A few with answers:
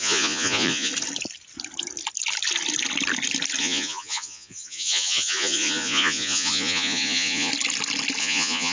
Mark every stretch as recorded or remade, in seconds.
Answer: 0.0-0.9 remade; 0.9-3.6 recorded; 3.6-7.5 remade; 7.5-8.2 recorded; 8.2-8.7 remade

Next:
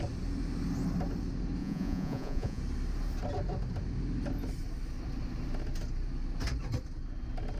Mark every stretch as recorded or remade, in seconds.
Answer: 0.0-1.6 recorded; 1.6-2.6 remade; 2.6-7.6 recorded

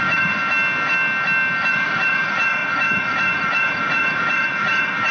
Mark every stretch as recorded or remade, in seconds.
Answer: 0.0-0.4 remade; 0.4-1.7 recorded; 1.7-5.1 remade

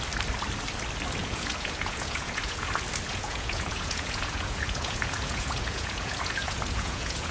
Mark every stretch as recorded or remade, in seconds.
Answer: 0.0-1.2 recorded; 1.2-2.7 remade; 2.7-3.1 recorded; 3.1-7.3 remade

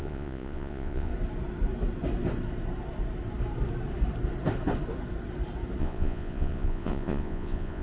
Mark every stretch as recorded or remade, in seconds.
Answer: 0.0-1.1 remade; 1.1-5.8 recorded; 5.8-7.8 remade

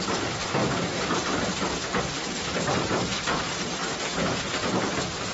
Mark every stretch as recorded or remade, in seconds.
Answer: 0.0-3.8 recorded; 3.8-4.4 remade; 4.4-5.3 recorded

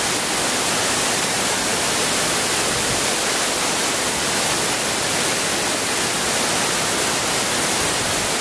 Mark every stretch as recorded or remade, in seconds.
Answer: 0.0-8.4 recorded